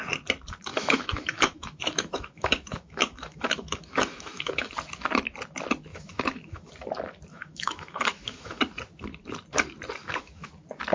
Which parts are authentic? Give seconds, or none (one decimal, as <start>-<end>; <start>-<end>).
0.0-0.7; 4.7-5.9; 6.7-7.3; 8.6-10.0; 10.5-10.9